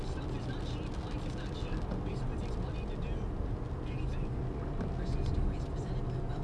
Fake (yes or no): no